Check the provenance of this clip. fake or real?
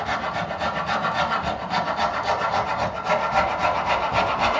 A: real